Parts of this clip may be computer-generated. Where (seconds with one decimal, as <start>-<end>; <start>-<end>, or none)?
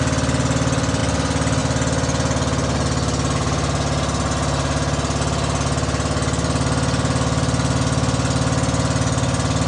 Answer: none